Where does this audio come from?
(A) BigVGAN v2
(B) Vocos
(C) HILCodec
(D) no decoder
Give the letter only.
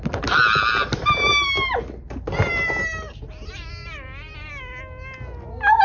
D